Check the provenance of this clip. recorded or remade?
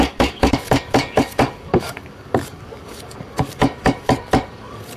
remade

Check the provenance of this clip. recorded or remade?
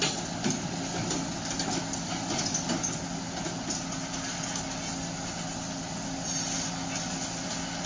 recorded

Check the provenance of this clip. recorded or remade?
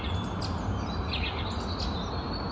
recorded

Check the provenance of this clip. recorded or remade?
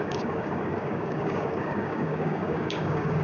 remade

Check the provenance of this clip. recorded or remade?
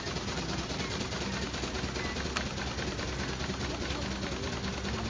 recorded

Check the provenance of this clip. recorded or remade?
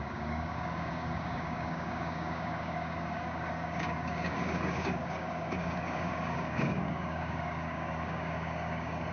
remade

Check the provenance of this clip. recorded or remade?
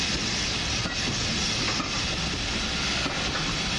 recorded